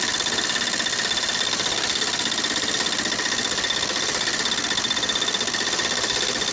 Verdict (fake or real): real